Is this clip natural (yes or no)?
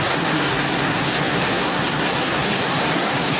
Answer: no